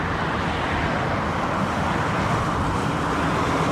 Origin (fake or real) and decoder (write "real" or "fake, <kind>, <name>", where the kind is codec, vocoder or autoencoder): real